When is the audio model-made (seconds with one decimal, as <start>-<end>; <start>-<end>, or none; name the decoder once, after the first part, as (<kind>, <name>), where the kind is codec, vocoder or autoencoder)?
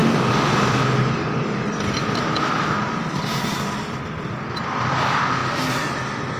none